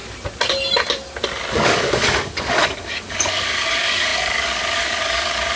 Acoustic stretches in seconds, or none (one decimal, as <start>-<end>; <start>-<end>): 0.0-1.5